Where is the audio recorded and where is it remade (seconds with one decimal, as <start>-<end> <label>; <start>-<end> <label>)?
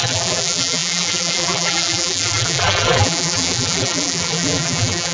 0.0-5.1 remade